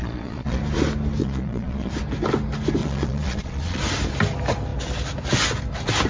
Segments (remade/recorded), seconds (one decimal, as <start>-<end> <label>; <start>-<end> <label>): 0.0-0.6 remade; 0.6-1.2 recorded; 1.2-1.9 remade; 1.9-2.8 recorded; 2.8-3.8 remade; 3.8-6.1 recorded